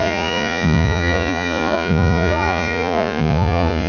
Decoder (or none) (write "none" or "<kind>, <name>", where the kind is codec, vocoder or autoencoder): vocoder, Vocos